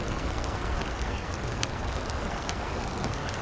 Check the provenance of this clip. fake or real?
fake